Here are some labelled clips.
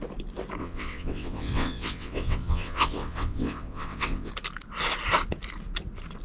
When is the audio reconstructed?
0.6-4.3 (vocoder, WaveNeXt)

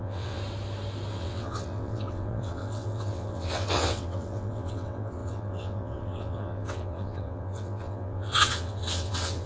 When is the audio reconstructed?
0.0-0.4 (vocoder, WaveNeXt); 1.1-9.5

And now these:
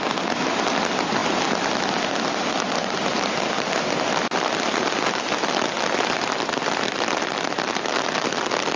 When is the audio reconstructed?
none

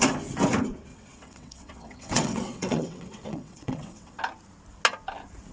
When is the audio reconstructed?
0.9-4.2 (vocoder, WaveNeXt)

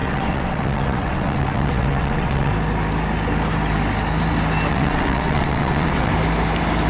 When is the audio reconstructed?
0.0-2.5 (vocoder, WaveNeXt); 4.7-6.1

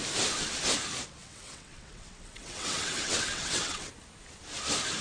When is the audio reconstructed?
1.2-3.9 (vocoder, WaveNeXt)